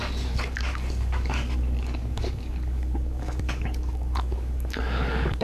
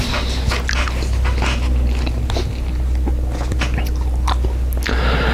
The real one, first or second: second